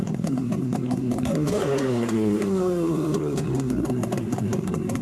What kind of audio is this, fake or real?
fake